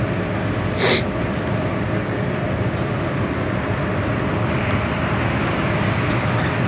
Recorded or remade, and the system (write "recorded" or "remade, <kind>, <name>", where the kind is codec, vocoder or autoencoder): recorded